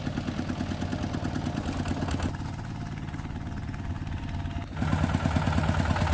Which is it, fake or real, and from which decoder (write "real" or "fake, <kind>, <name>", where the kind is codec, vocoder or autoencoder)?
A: real